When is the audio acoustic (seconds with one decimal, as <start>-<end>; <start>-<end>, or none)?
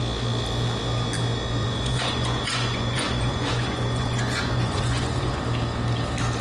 0.0-1.6; 5.4-6.4